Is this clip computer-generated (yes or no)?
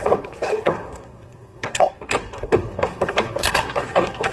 yes